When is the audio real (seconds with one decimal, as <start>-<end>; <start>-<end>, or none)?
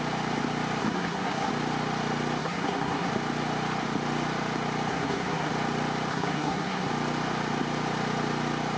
0.0-0.8; 1.5-2.4; 3.1-4.9; 5.5-6.1; 6.9-8.8